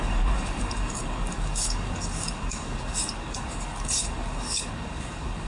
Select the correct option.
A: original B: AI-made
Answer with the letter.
B